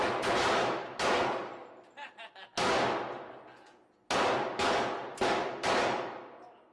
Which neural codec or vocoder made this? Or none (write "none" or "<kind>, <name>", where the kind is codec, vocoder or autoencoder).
none